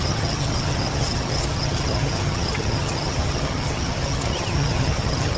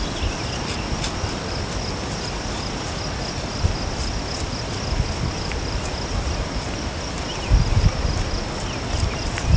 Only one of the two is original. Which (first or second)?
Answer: second